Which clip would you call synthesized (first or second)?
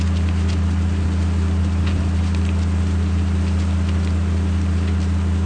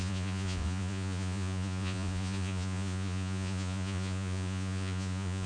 second